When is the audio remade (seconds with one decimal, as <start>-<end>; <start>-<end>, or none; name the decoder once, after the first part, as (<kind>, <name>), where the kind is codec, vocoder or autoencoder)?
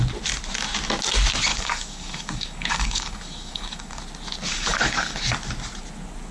1.5-4.0 (codec, DAC); 4.5-5.2